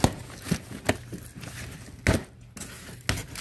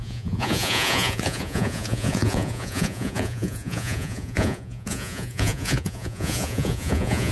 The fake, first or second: second